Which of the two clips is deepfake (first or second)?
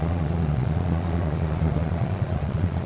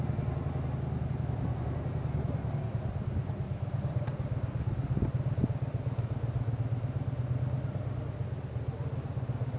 first